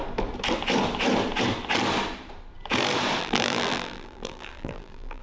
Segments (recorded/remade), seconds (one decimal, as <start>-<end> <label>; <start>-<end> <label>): 0.0-3.2 recorded; 3.2-5.2 remade